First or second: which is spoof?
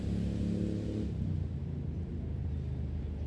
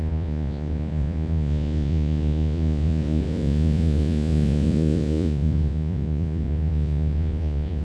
second